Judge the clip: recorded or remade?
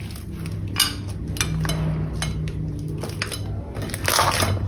recorded